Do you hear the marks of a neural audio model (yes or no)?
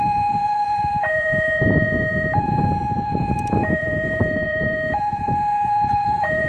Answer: yes